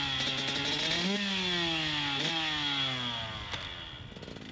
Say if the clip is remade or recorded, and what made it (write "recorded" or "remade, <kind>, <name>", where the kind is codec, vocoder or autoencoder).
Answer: recorded